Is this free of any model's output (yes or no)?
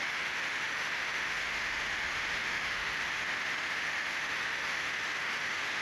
no